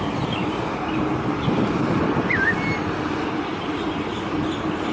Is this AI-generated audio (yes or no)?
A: no